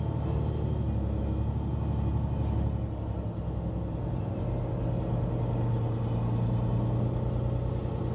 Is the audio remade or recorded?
recorded